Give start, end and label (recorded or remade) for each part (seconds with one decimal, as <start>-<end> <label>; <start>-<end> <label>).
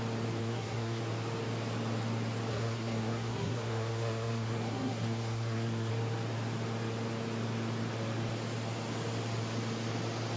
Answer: 0.0-0.4 recorded; 0.4-1.0 remade; 1.0-2.5 recorded; 2.5-5.9 remade; 5.9-10.4 recorded